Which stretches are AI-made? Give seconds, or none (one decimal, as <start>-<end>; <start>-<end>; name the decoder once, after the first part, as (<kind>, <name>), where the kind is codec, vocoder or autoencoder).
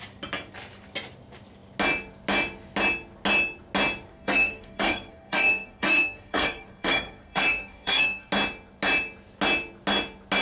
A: 4.1-8.3 (codec, SNAC)